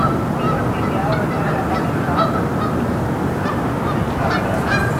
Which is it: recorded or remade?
recorded